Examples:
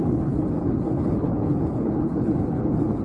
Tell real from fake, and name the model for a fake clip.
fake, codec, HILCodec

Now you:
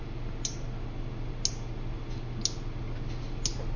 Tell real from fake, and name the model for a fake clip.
real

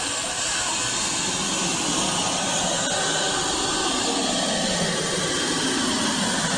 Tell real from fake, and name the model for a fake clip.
real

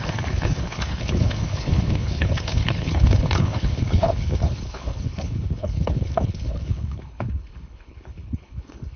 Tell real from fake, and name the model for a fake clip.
fake, codec, HILCodec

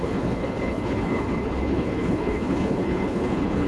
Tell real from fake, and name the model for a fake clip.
fake, codec, HILCodec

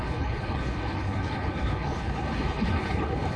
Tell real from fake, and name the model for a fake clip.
fake, codec, HILCodec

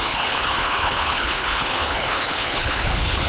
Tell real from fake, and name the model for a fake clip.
fake, codec, HILCodec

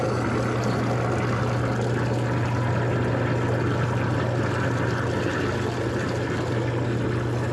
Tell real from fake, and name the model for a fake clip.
real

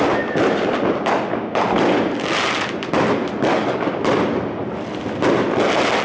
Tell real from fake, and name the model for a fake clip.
real